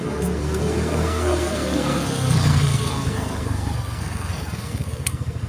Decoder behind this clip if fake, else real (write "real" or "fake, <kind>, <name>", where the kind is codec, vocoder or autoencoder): fake, codec, SNAC